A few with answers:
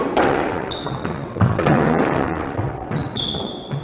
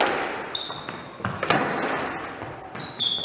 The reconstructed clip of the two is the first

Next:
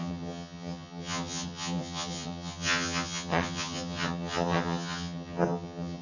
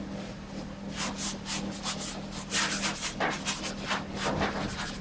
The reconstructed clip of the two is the first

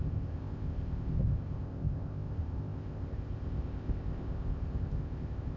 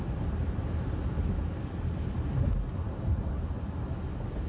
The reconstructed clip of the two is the first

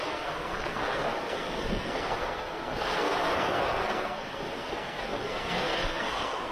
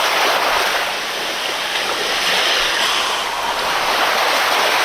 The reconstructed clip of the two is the first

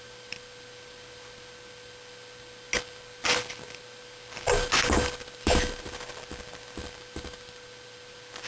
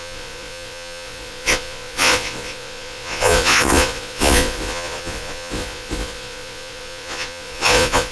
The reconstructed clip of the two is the second